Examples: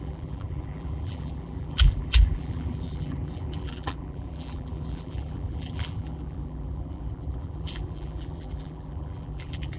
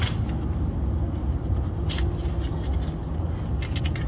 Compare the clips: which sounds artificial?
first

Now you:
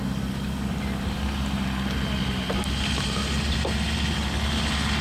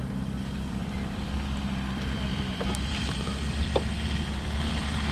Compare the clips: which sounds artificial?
second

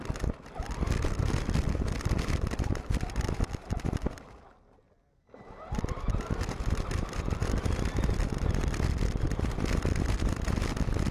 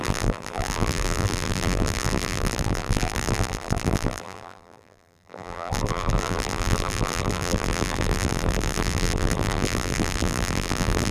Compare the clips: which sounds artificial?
second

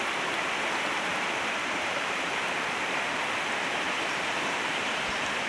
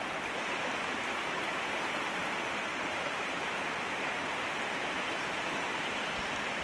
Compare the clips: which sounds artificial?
first